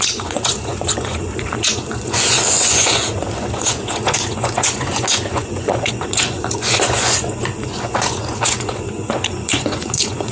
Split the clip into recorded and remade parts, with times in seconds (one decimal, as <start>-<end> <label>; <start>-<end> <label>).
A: 0.0-10.3 remade